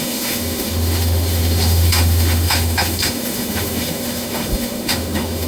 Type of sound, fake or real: fake